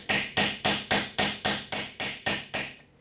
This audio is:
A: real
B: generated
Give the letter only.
A